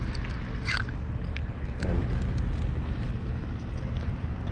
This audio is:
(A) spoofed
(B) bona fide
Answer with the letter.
B